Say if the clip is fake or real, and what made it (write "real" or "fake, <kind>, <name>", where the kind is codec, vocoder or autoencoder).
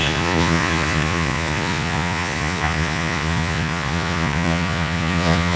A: fake, vocoder, Vocos